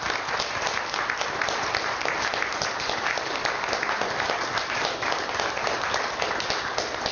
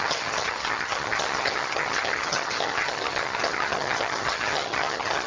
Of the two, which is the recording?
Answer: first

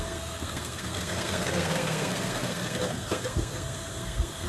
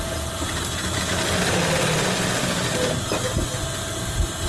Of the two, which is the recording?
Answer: second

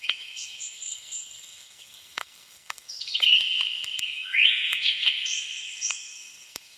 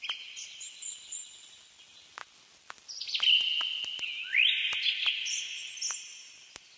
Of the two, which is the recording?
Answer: second